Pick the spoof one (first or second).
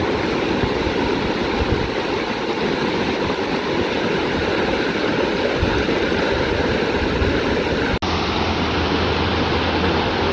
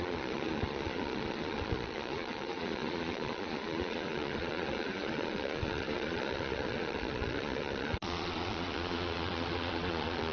second